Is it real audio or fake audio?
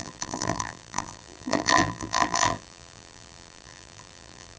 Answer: fake